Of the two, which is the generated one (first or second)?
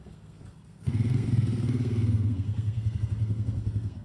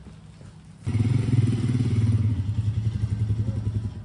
first